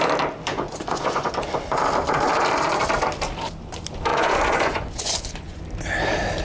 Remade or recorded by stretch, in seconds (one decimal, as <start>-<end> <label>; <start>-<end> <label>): 0.0-0.5 recorded; 0.5-1.3 remade; 1.3-4.1 recorded; 4.1-5.6 remade; 5.6-6.4 recorded